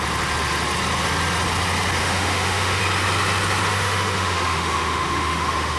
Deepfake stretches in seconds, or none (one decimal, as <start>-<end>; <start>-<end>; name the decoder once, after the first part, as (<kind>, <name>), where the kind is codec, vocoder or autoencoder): 2.0-2.8 (autoencoder, DAC-VAE); 3.7-5.8